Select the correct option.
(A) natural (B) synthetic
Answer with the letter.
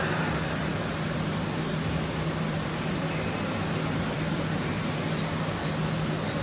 A